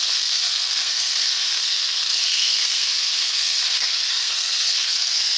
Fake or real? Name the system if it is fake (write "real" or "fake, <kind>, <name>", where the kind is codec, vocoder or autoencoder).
fake, codec, SNAC